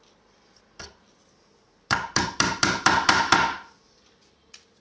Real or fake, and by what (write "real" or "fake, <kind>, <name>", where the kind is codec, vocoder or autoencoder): fake, vocoder, BigVGAN v2